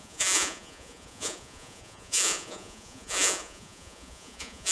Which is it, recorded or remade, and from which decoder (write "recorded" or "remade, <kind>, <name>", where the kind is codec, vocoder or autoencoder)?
remade, vocoder, Vocos